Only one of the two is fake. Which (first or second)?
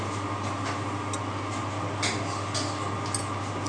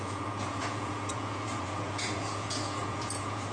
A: second